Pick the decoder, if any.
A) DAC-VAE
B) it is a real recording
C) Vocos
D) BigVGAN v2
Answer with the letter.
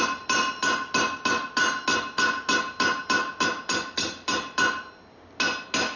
B